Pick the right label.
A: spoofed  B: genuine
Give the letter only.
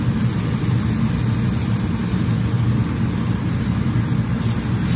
B